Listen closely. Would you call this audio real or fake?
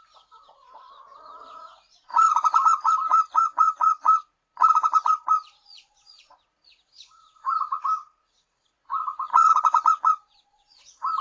fake